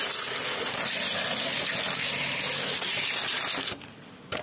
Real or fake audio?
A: real